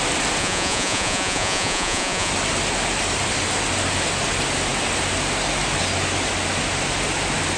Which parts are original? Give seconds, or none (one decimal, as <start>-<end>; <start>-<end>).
0.0-0.4; 2.3-7.6